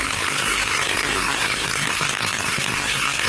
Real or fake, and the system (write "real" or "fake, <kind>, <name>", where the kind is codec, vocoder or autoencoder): fake, codec, SNAC